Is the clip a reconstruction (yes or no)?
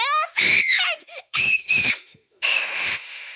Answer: yes